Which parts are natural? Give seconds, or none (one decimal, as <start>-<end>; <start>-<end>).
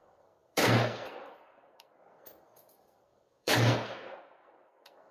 none